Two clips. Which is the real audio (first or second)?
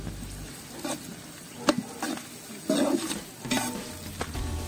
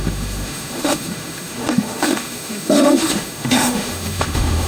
first